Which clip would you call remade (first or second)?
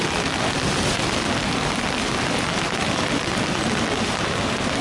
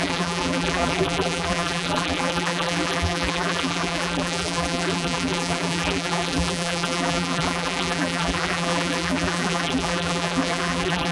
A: second